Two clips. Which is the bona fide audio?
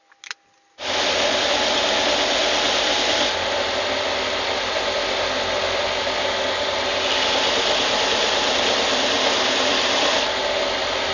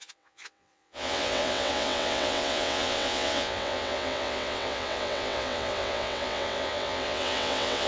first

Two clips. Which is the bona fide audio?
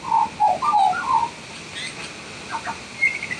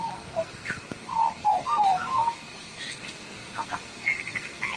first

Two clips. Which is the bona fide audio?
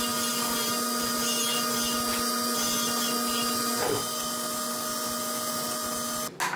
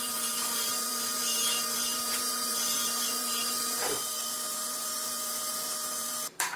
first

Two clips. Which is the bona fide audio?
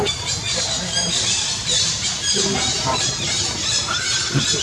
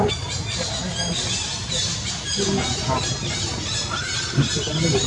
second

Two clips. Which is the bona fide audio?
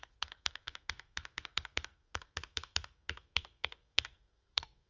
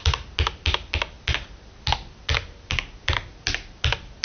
second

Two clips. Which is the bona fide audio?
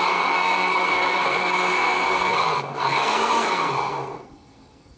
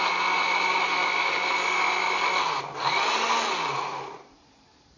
second